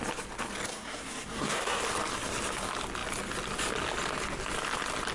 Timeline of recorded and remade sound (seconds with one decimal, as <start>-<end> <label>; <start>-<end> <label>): 0.0-0.7 recorded; 0.7-1.8 remade; 1.8-5.1 recorded